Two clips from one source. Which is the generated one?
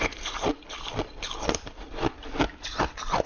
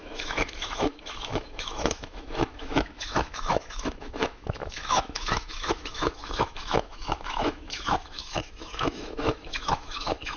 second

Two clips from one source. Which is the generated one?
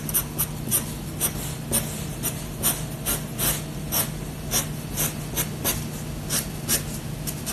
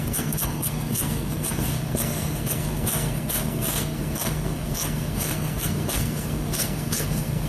second